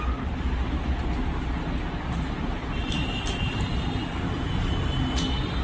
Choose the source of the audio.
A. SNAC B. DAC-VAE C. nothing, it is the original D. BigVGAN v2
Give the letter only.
C